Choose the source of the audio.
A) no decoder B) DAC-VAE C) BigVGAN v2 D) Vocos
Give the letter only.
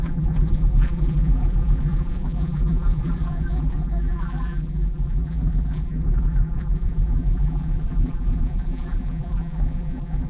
C